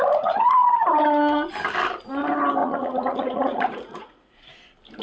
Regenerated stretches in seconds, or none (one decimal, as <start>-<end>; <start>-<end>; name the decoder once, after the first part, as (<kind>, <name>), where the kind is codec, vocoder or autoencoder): 2.6-4.5 (vocoder, Vocos)